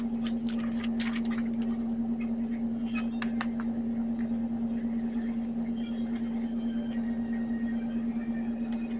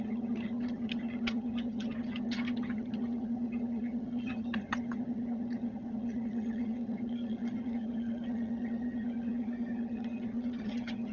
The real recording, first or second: first